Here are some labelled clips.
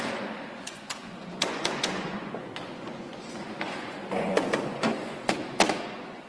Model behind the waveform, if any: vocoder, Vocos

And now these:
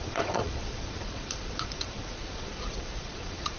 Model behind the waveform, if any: vocoder, Vocos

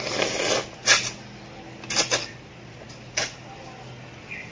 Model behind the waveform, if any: none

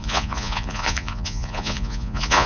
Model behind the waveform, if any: vocoder, Vocos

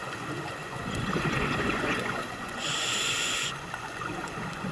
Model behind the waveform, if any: vocoder, Vocos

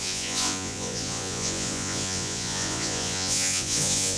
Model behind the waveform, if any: vocoder, Vocos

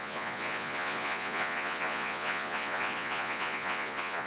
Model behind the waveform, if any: vocoder, Vocos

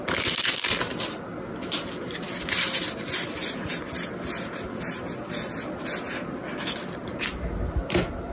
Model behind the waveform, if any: none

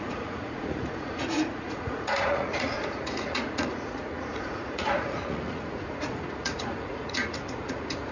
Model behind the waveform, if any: vocoder, Vocos